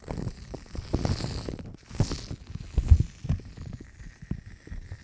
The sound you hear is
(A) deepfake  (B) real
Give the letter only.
B